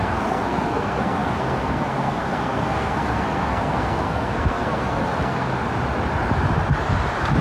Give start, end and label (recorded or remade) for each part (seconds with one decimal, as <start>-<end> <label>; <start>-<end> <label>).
0.0-5.5 remade; 5.5-7.4 recorded